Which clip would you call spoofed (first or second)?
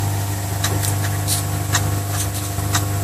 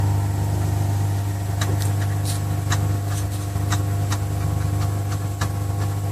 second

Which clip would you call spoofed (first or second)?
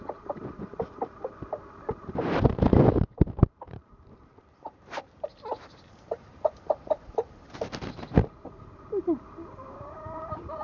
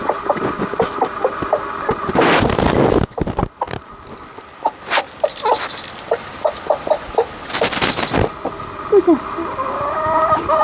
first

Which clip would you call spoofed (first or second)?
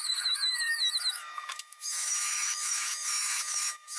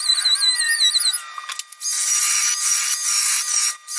first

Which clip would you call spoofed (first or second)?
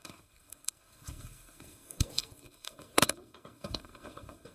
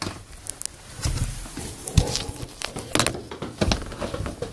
first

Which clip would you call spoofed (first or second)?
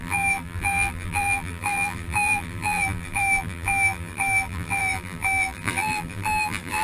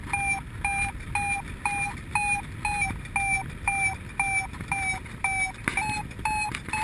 first